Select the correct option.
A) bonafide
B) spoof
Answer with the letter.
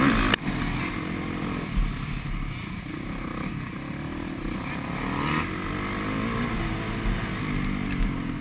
A